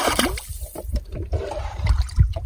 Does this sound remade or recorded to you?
remade